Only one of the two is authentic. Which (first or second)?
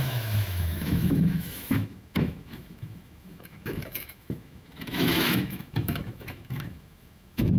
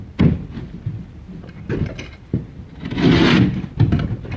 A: second